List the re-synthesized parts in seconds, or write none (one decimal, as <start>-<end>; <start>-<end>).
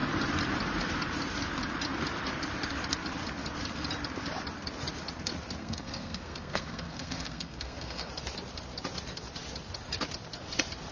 5.6-8.1